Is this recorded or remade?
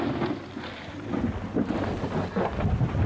recorded